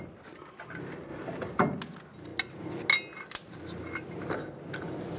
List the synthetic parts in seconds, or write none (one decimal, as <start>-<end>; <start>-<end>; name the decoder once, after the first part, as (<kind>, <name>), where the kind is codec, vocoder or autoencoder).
none